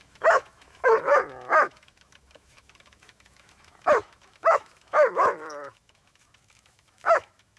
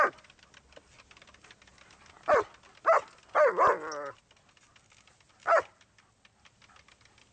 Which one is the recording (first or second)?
second